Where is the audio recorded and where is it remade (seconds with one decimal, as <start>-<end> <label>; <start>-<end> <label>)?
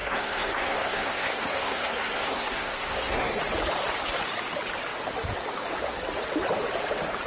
0.0-3.4 remade; 3.4-7.3 recorded